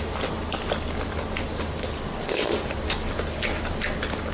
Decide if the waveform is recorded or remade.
recorded